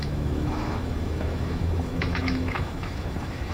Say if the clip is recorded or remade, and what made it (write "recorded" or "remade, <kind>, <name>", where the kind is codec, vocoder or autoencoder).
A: remade, autoencoder, DAC-VAE